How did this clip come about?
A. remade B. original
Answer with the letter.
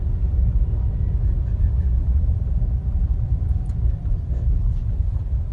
B